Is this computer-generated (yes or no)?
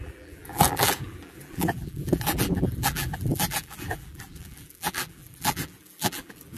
yes